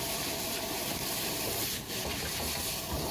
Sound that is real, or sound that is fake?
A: fake